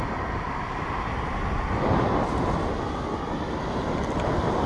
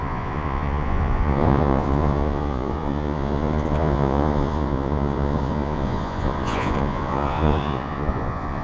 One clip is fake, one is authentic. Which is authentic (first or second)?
first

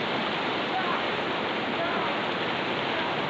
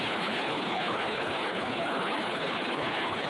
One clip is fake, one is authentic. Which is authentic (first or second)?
first